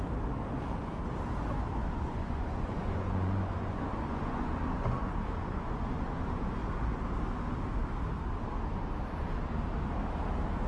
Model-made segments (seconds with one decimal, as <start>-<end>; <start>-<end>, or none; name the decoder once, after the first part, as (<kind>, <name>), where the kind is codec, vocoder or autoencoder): 1.8-6.4 (vocoder, Vocos)